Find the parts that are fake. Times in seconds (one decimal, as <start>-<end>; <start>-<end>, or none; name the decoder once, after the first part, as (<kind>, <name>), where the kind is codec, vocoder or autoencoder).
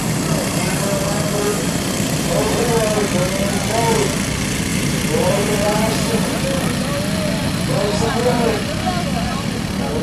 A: 1.5-2.7 (vocoder, BigVGAN v2); 4.7-6.9